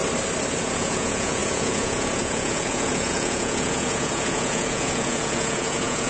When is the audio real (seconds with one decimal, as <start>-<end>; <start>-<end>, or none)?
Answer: 0.0-0.6